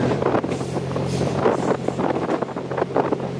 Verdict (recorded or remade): recorded